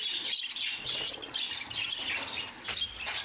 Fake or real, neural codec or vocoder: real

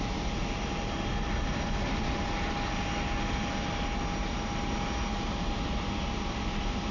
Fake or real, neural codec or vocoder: real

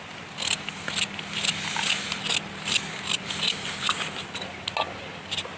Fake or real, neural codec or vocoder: real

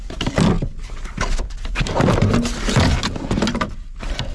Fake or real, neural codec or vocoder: real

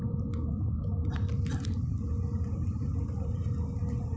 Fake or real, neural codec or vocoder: real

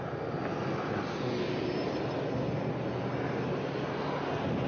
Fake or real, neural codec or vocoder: real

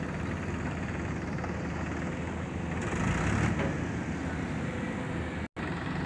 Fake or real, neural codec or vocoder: real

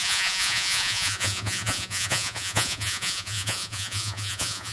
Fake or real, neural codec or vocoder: fake, vocoder, Vocos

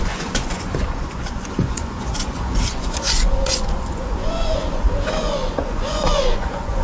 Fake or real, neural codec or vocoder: fake, vocoder, Vocos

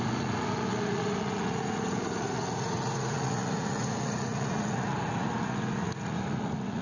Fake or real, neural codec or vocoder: fake, vocoder, Vocos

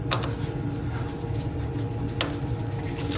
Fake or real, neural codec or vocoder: real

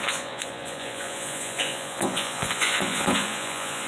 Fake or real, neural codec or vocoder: fake, vocoder, Vocos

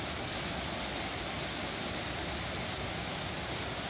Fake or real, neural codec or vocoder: real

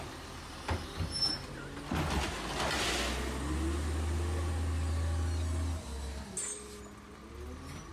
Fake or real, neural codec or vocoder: real